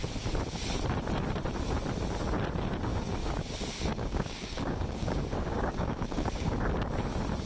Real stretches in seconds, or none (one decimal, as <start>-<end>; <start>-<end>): 0.0-2.9; 6.5-7.5